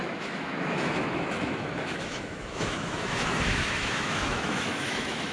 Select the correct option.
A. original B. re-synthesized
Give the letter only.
B